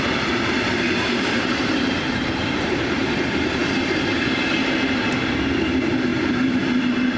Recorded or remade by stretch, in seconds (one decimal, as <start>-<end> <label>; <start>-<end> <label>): 0.0-7.2 remade